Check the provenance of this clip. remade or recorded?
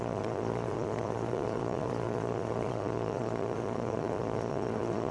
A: remade